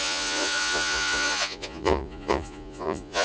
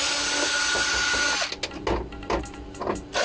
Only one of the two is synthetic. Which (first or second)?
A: first